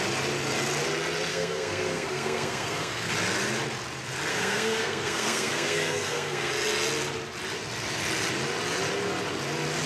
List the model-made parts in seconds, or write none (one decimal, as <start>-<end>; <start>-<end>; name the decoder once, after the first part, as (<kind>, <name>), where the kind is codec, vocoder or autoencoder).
1.3-3.1 (codec, SNAC); 4.3-6.5